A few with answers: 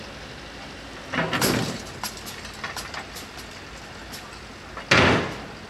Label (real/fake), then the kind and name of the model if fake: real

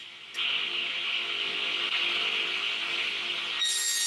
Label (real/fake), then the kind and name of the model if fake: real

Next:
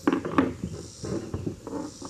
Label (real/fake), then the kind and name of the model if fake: real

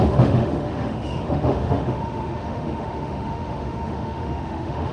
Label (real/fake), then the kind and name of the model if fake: fake, autoencoder, DAC-VAE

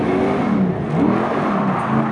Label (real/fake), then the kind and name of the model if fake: real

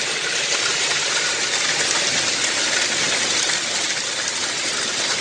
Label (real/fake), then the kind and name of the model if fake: real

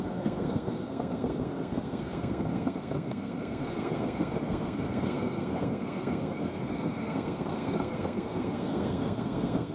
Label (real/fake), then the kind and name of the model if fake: fake, codec, SNAC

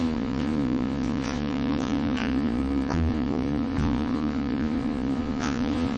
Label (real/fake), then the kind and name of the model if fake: fake, vocoder, Vocos